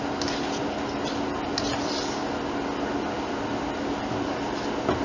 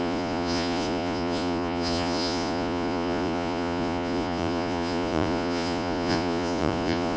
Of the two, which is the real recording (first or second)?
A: first